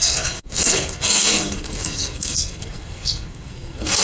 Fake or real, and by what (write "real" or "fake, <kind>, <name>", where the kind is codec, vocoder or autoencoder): fake, codec, SNAC